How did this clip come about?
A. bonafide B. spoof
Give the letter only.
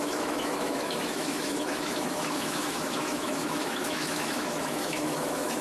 B